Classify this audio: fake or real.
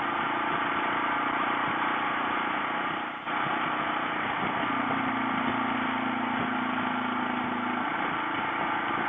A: real